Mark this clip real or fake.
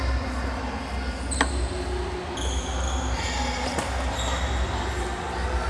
real